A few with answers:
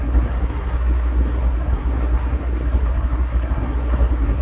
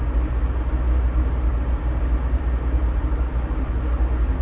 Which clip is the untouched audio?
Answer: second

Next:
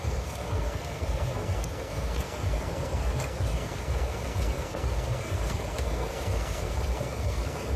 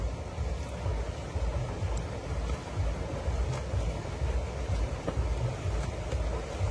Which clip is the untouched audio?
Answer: second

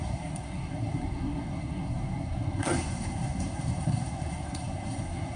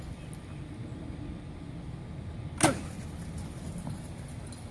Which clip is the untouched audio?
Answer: second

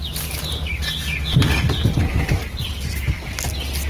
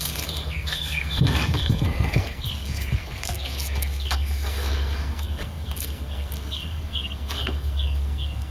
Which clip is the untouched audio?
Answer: first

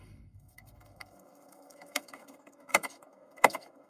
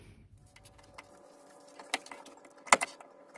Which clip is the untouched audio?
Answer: second